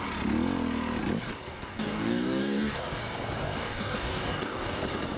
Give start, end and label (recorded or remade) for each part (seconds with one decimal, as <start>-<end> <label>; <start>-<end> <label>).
0.0-1.5 recorded; 1.5-3.0 remade; 3.0-3.6 recorded; 3.6-4.8 remade; 4.8-5.2 recorded